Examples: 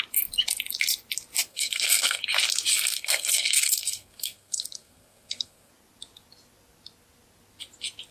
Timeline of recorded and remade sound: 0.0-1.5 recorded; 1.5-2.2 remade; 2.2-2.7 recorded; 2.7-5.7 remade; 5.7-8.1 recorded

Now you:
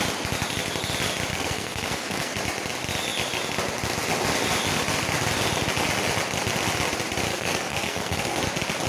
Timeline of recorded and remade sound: 0.0-1.3 recorded; 1.3-2.4 remade; 2.4-7.3 recorded; 7.3-8.4 remade; 8.4-8.9 recorded

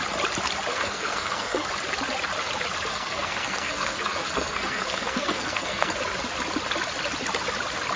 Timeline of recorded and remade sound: 0.0-0.7 recorded; 0.7-1.7 remade; 1.7-2.9 recorded; 2.9-6.0 remade; 6.0-8.0 recorded

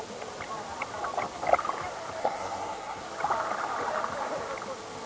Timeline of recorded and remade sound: 0.0-2.2 recorded; 2.2-3.0 remade; 3.0-5.1 recorded